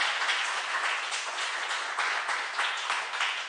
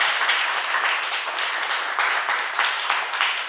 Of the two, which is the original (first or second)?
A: second